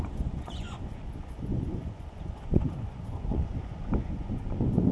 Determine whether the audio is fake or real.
fake